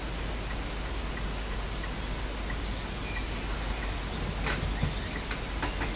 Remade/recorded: recorded